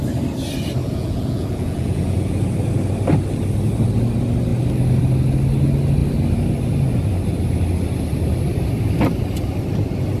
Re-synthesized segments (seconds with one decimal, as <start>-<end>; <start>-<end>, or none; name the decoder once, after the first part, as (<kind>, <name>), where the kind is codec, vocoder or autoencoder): 0.8-2.4 (vocoder, Vocos)